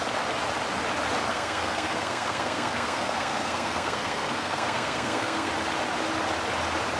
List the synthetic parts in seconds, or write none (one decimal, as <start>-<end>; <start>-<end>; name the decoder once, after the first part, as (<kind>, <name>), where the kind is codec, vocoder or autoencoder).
1.3-5.5 (codec, SNAC)

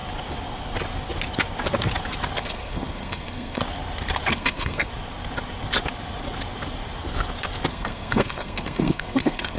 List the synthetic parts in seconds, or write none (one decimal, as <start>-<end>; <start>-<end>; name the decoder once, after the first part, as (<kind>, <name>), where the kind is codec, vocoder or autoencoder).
2.4-3.6 (codec, SNAC); 4.3-4.9; 7.7-9.6

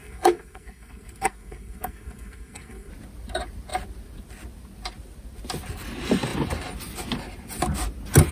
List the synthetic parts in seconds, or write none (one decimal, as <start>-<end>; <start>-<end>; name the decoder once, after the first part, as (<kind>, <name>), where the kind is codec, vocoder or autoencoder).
0.0-2.9 (codec, SNAC)

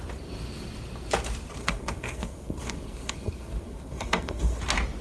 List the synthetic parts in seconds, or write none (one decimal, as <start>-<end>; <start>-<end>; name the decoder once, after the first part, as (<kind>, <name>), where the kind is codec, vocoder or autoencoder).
1.6-4.6 (codec, SNAC)

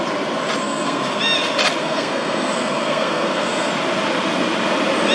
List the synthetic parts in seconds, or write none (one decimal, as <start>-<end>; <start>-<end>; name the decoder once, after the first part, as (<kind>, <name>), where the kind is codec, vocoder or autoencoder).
0.6-1.2 (codec, SNAC); 1.8-3.7

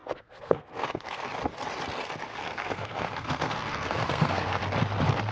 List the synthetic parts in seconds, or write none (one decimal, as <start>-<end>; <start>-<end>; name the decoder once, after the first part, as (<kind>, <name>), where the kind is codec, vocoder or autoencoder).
0.0-1.3 (codec, SNAC); 2.3-4.6

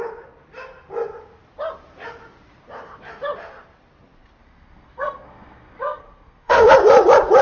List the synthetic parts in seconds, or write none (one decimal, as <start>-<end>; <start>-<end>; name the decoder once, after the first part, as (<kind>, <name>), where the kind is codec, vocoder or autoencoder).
4.4-6.7 (codec, SNAC)